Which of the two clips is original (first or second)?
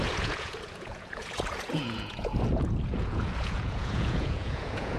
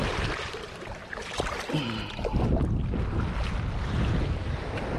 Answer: second